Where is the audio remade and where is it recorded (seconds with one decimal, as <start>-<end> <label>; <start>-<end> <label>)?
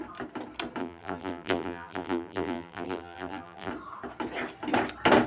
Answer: 0.0-0.8 recorded; 0.8-3.7 remade; 3.7-5.3 recorded